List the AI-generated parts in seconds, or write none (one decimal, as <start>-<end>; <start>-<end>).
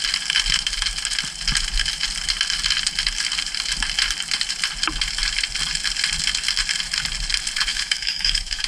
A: 7.7-8.7